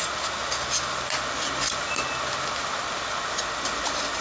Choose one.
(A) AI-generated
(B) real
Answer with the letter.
B